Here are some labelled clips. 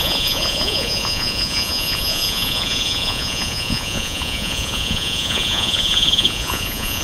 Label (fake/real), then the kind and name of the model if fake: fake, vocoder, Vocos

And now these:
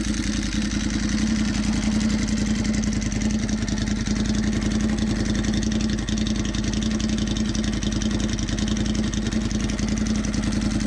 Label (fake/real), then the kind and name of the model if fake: real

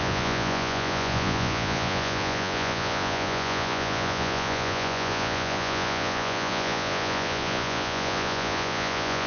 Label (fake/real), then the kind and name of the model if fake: fake, vocoder, Vocos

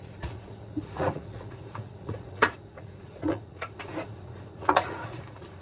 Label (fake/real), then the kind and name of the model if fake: fake, vocoder, Vocos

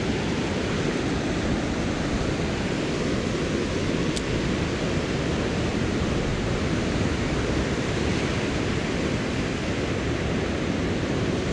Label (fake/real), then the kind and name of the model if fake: real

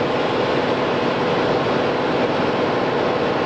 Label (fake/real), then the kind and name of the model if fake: real